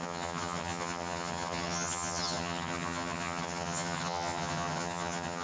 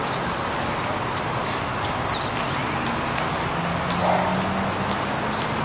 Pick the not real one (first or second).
first